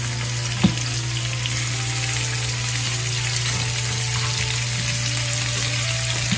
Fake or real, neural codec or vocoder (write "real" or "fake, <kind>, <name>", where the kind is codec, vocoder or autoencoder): real